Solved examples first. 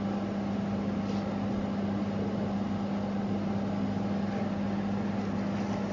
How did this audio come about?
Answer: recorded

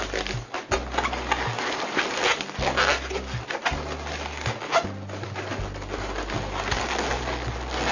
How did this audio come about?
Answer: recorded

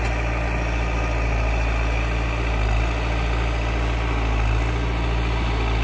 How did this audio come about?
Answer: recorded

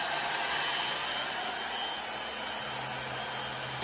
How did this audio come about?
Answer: recorded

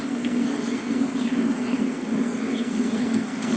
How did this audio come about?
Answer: remade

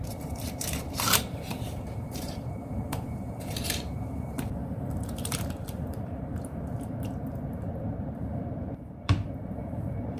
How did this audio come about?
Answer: remade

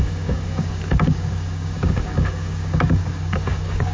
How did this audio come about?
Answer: remade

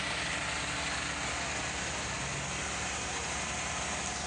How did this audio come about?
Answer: recorded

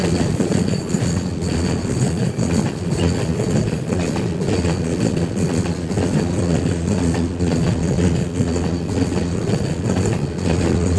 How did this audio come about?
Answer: remade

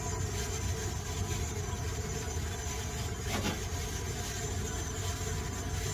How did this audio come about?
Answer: recorded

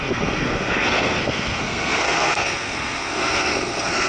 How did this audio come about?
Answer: remade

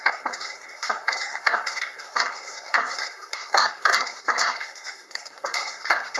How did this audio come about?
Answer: remade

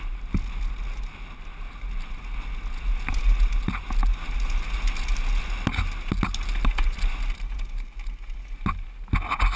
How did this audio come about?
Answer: recorded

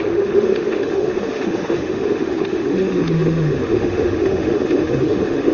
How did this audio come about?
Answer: remade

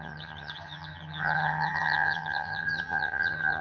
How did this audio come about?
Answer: remade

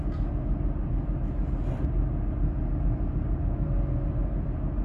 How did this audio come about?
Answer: recorded